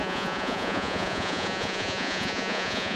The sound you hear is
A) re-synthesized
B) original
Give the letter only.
A